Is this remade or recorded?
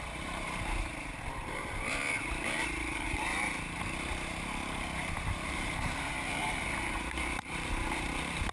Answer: remade